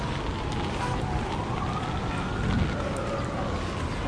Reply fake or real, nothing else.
real